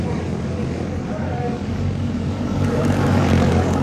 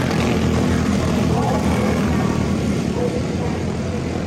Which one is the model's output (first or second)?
first